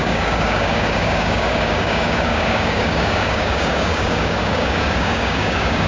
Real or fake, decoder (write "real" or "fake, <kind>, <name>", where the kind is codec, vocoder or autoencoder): fake, codec, DAC